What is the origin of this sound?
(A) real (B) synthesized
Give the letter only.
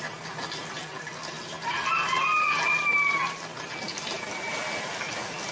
A